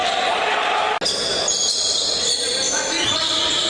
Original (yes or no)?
yes